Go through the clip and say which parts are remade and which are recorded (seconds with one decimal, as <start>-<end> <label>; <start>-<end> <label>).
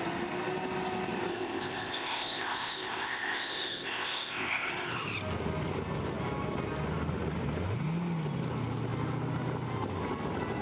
0.0-1.3 recorded; 1.3-4.7 remade; 4.7-10.6 recorded